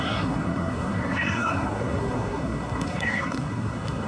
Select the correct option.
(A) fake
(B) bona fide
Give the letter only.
A